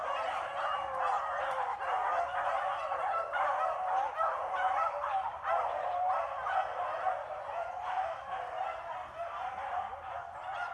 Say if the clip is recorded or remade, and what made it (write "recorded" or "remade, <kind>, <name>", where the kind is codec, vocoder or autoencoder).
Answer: recorded